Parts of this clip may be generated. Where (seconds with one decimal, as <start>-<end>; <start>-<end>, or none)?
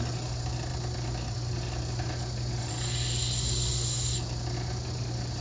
none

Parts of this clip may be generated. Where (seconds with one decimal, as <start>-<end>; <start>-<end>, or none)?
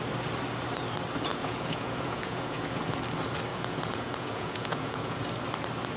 1.3-2.8; 3.5-5.2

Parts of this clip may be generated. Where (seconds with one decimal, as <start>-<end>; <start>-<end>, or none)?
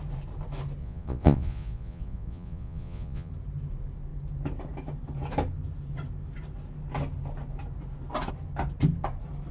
0.8-3.3